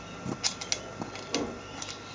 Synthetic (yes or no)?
no